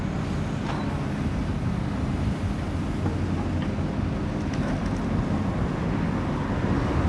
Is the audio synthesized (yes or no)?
no